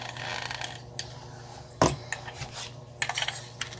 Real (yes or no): yes